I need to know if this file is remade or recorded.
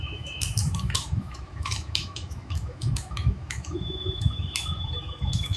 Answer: remade